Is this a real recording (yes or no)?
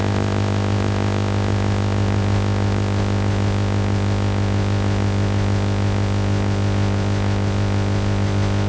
no